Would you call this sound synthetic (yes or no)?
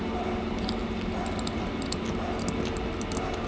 no